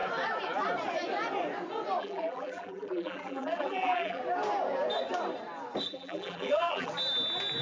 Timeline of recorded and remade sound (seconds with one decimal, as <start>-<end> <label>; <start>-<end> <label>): 0.0-2.0 recorded; 2.0-4.2 remade; 4.2-5.8 recorded; 5.8-6.9 remade; 6.9-7.6 recorded